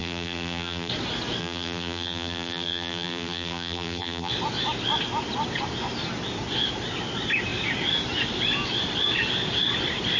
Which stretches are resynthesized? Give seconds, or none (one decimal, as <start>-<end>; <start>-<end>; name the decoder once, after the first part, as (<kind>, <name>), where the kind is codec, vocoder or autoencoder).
0.0-0.9 (vocoder, BigVGAN v2); 1.4-4.3